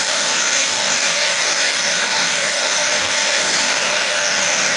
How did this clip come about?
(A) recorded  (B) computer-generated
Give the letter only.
B